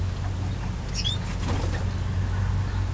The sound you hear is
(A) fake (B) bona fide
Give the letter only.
B